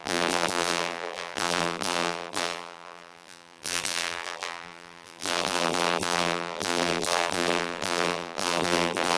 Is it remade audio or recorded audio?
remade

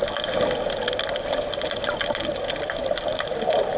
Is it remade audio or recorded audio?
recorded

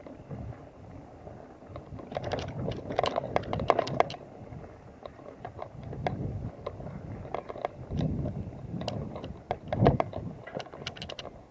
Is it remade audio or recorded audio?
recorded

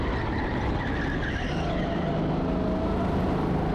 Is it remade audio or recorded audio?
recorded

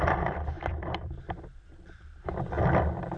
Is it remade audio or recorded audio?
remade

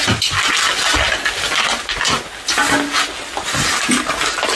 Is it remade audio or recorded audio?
recorded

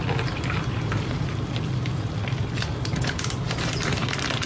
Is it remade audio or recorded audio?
remade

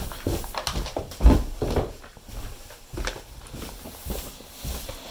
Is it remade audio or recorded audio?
recorded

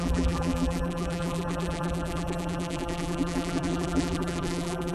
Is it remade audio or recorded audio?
remade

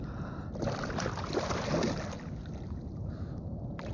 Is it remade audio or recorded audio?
recorded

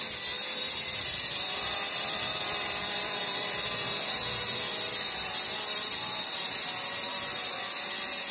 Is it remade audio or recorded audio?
remade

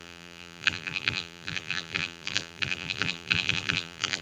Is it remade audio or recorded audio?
remade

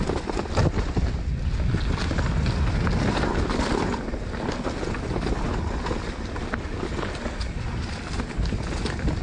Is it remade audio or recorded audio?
recorded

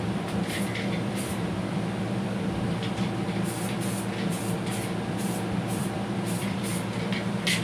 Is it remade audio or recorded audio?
remade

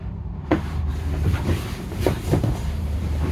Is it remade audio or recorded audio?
remade